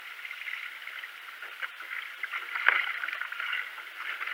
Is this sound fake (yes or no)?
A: no